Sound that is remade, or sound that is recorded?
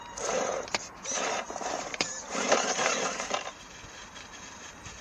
remade